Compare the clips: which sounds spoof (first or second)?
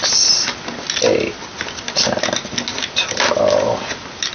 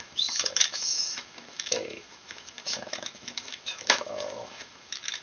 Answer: second